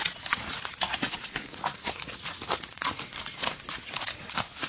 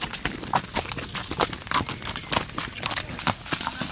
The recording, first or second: second